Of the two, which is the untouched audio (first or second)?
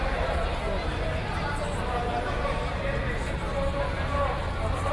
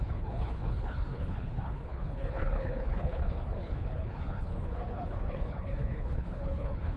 first